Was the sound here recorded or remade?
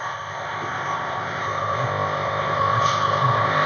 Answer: remade